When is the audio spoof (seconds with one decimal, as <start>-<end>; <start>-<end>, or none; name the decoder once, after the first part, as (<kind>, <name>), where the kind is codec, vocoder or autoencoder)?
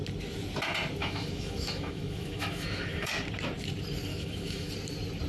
1.0-3.1 (autoencoder, DAC-VAE); 4.1-4.7